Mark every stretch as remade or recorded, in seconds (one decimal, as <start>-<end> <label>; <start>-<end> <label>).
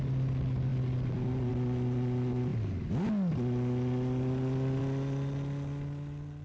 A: 0.0-6.4 recorded